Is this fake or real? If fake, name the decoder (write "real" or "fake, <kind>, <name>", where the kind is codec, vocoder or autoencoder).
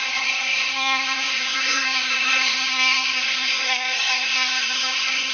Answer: fake, codec, SNAC